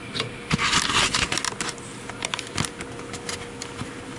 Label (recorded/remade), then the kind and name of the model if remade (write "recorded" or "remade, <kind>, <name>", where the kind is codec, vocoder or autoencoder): recorded